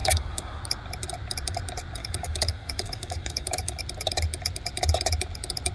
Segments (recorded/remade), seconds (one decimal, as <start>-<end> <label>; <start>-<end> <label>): 0.0-0.6 remade; 0.6-2.0 recorded; 2.0-3.8 remade; 3.8-5.7 recorded